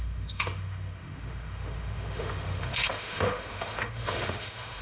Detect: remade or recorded remade